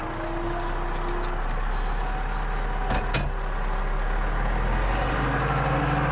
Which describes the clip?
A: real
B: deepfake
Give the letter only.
A